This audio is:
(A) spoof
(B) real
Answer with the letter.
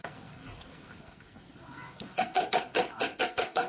A